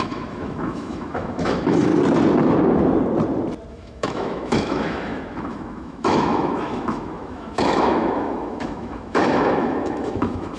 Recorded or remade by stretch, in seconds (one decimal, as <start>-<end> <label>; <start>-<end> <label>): 0.0-1.9 remade; 1.9-3.7 recorded; 3.7-10.6 remade